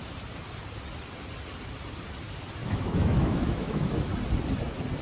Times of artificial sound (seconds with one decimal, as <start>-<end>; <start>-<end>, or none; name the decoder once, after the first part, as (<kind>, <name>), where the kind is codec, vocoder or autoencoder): 2.6-4.1 (autoencoder, DAC-VAE)